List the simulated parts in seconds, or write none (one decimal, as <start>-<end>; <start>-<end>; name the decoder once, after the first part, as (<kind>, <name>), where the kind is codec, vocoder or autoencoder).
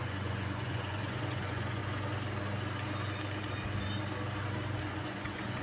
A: 0.0-1.8 (vocoder, Vocos); 4.8-5.6